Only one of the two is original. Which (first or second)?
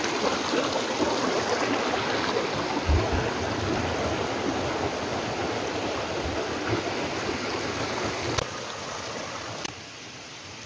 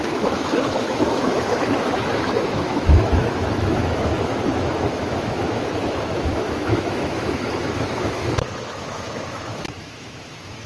first